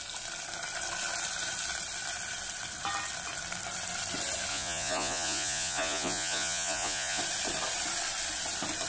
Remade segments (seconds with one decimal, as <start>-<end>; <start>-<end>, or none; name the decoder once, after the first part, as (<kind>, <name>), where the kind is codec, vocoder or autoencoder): 4.5-7.2 (vocoder, Vocos)